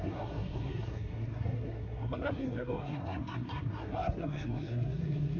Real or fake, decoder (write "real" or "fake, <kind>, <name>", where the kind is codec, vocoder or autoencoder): fake, codec, SNAC